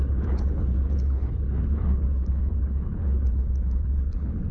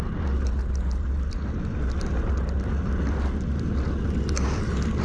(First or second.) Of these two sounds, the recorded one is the second